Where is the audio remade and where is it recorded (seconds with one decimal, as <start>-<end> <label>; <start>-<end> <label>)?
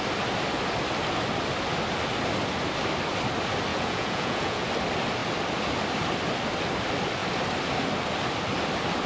0.0-3.7 recorded; 3.7-4.7 remade; 4.7-9.1 recorded